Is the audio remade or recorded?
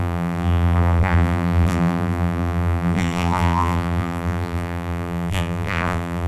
remade